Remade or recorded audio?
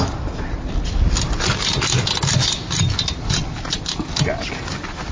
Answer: recorded